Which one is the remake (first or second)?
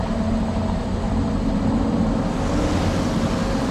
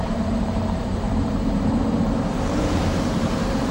second